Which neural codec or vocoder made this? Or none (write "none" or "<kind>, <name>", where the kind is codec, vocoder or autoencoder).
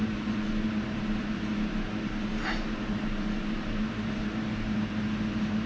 vocoder, BigVGAN v2